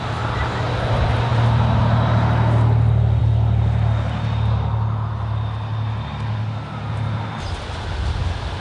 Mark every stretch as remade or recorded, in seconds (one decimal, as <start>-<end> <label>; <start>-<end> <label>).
0.0-8.6 recorded